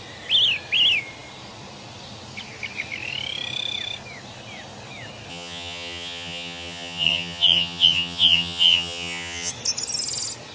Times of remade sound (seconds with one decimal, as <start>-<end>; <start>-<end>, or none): 5.3-9.5